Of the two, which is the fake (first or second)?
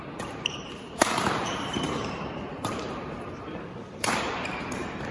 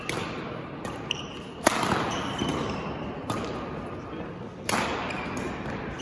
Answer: first